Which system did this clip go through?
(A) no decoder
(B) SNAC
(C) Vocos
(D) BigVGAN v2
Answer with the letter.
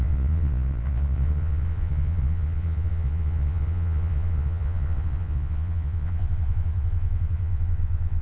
C